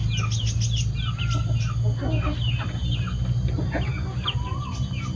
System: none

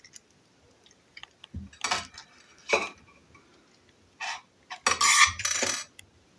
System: none